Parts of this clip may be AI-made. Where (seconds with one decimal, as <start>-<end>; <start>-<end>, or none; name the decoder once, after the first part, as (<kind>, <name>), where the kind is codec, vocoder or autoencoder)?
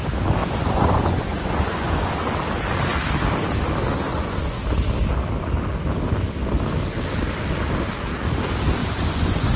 0.4-2.1 (vocoder, Vocos); 4.1-4.6; 8.8-9.6